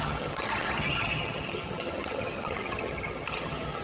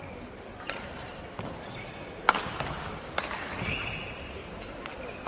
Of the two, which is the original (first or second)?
second